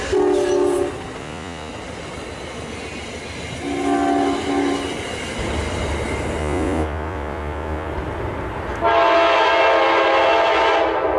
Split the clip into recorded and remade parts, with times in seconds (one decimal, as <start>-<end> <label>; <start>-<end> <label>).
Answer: 0.0-1.2 recorded; 1.2-1.7 remade; 1.7-6.4 recorded; 6.4-7.9 remade; 7.9-11.2 recorded